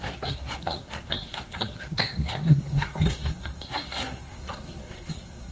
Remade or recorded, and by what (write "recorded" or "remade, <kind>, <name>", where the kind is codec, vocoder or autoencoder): remade, codec, SNAC